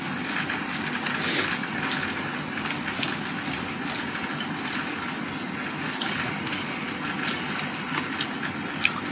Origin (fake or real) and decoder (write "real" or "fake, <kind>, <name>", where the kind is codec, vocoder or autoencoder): real